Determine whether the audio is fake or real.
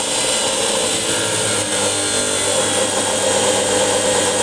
real